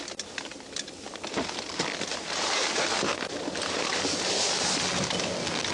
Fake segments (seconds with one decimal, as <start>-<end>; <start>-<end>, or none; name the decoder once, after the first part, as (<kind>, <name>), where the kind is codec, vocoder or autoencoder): 0.5-3.9 (vocoder, BigVGAN v2)